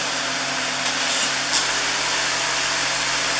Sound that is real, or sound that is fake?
real